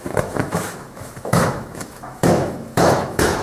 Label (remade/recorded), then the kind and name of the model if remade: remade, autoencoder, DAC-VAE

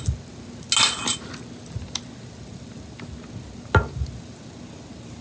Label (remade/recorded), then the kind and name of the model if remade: recorded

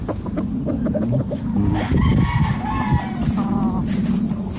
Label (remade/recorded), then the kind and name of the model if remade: recorded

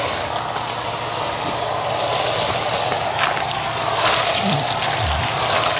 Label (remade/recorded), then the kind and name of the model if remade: recorded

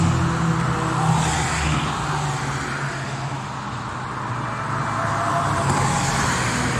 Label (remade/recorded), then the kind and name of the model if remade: recorded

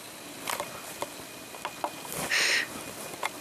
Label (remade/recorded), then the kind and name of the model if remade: recorded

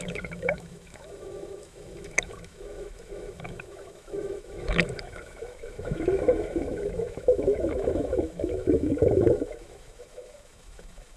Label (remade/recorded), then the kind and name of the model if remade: remade, autoencoder, DAC-VAE